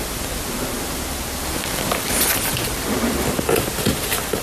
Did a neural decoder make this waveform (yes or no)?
no